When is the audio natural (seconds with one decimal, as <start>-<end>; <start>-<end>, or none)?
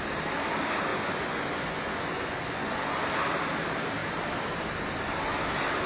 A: 0.0-0.9; 3.0-5.9